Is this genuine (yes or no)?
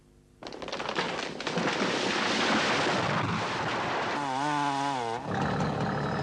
yes